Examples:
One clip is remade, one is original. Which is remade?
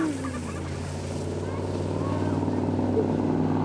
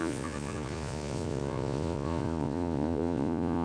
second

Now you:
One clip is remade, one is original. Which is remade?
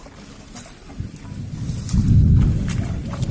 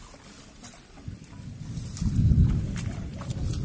second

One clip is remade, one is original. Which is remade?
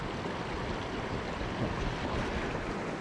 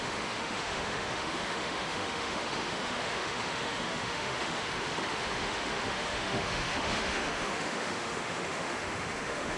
second